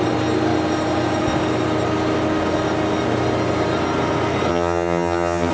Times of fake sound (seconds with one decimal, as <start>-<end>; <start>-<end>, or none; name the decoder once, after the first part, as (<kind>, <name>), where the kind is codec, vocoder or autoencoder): 4.5-5.5 (vocoder, HiFi-GAN)